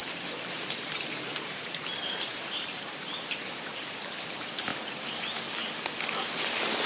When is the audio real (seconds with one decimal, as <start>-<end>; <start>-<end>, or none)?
2.9-4.7; 6.0-6.9